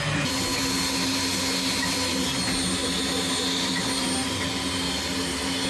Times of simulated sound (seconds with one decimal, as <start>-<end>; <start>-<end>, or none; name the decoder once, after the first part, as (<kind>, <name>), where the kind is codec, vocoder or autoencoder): none